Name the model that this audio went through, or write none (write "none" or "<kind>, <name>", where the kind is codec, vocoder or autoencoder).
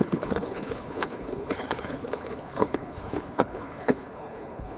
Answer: codec, HILCodec